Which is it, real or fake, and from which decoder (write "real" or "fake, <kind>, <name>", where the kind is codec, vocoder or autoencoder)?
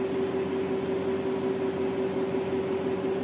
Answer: real